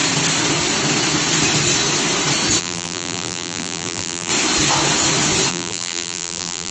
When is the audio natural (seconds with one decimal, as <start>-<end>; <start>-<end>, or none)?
0.0-2.6; 4.3-5.5